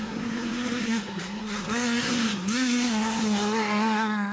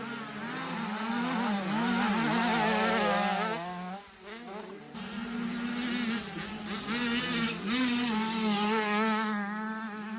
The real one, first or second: second